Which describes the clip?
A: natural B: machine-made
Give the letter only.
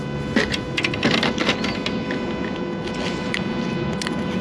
A